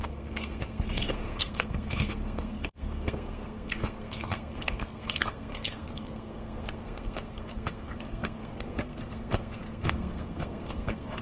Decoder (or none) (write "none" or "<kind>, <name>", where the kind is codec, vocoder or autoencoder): codec, SNAC